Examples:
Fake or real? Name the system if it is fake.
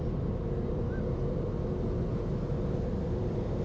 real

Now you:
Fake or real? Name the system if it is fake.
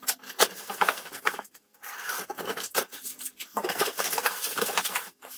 fake, codec, SNAC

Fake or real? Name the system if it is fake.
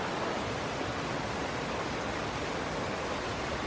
real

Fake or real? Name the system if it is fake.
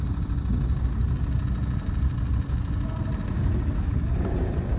real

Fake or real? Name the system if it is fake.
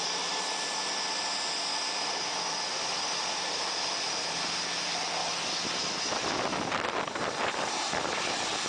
real